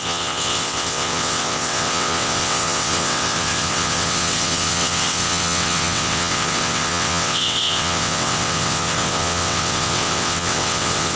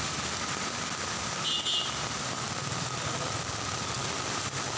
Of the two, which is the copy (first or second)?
first